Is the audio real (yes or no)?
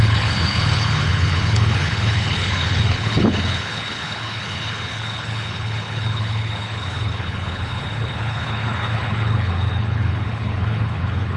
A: no